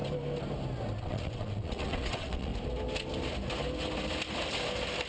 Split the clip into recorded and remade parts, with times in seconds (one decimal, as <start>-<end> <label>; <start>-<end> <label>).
0.0-1.0 recorded; 1.0-2.5 remade; 2.5-5.1 recorded